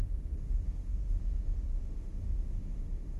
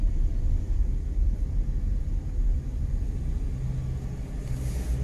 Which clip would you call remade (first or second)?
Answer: first